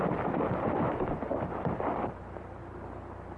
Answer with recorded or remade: recorded